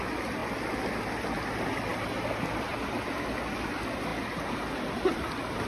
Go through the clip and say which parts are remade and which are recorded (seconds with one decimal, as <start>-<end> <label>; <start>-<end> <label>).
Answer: 0.0-5.7 recorded